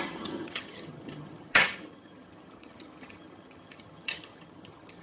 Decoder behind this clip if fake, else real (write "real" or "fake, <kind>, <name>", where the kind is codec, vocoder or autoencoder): fake, vocoder, HiFi-GAN